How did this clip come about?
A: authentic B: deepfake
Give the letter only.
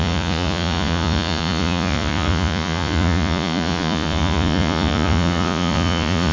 B